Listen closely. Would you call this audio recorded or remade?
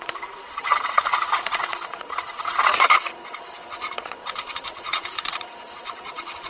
remade